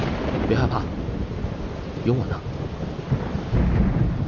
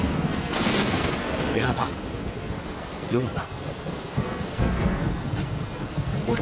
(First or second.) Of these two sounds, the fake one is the second